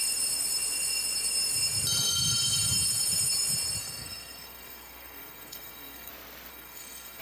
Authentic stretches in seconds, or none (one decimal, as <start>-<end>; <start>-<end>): 0.0-3.8; 6.1-6.5